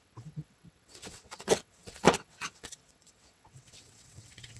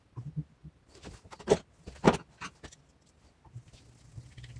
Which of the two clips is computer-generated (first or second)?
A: first